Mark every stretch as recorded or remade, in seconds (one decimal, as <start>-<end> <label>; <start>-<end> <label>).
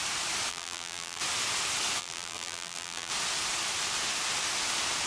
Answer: 0.0-0.5 recorded; 0.5-1.2 remade; 1.2-2.0 recorded; 2.0-3.1 remade; 3.1-5.1 recorded